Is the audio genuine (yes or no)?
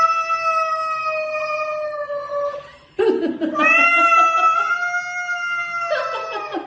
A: yes